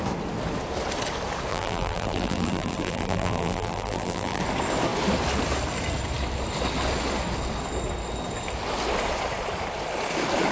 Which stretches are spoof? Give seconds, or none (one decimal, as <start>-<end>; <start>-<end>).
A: 1.5-4.4

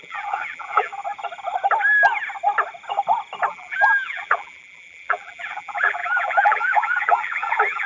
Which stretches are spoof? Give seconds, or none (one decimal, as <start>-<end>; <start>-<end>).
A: 0.0-0.9; 3.5-7.9

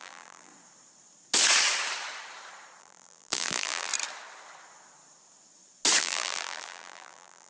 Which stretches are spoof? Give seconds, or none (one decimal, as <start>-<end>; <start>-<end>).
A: 0.0-0.5; 2.8-3.9; 6.0-7.5

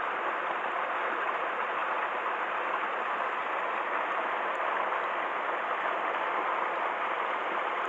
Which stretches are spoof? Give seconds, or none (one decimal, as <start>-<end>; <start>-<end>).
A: 0.0-7.9

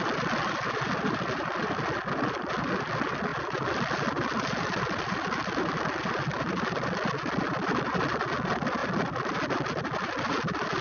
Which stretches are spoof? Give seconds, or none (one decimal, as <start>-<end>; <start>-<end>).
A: 0.0-10.8

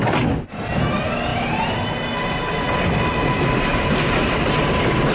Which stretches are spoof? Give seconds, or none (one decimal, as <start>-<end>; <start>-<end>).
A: none

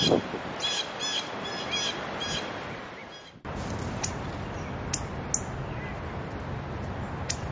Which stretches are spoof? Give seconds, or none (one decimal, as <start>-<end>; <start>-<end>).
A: none